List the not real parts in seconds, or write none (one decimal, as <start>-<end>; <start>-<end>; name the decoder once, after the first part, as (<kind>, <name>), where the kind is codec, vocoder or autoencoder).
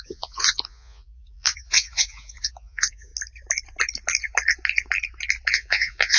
0.0-3.1 (vocoder, Vocos); 5.5-6.2